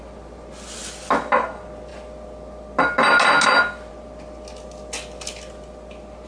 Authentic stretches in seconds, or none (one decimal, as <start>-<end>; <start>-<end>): 0.0-6.3